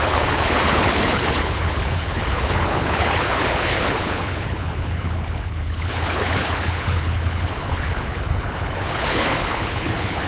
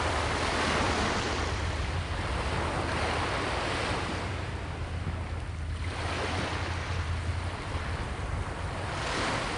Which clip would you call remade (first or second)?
first